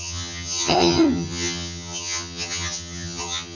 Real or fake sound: fake